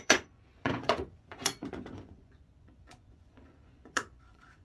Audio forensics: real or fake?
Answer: fake